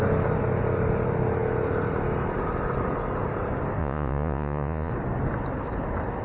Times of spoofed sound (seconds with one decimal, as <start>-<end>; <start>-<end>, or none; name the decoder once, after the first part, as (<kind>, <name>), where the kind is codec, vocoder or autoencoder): 3.8-4.9 (vocoder, Vocos)